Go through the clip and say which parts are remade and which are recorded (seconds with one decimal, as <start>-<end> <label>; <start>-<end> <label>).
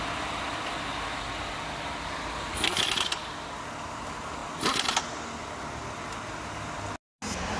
0.0-7.6 recorded